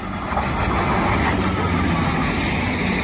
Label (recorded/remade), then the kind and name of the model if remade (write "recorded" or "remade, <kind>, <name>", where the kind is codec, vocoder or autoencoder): recorded